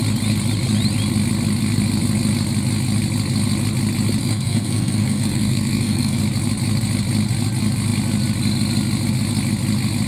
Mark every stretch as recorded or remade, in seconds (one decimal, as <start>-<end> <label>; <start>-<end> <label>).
0.0-4.2 recorded; 4.2-6.2 remade; 6.2-10.1 recorded